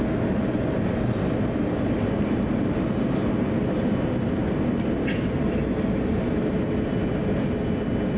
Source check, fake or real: real